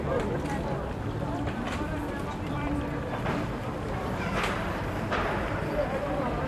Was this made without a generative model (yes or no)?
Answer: no